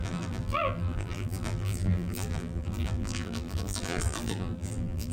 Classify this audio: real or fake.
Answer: fake